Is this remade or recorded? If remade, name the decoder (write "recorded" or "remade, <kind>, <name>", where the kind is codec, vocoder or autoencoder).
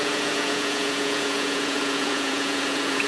remade, vocoder, Vocos